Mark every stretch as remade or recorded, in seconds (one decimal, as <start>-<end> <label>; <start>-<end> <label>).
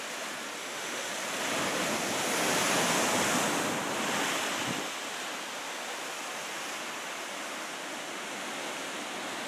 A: 0.0-0.6 recorded; 0.6-1.1 remade; 1.1-9.5 recorded